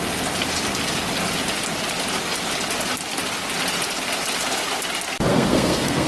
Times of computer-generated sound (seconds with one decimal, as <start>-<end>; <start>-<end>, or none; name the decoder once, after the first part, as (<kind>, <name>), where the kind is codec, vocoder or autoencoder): 5.3-6.1 (codec, SNAC)